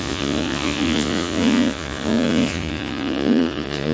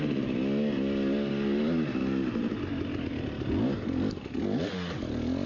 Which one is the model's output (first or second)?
first